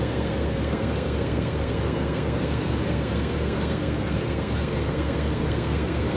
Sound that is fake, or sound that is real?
fake